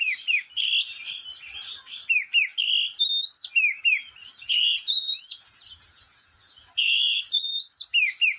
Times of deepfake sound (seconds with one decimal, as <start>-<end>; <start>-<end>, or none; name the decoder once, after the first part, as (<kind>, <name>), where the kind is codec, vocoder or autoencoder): 4.2-7.3 (vocoder, Vocos)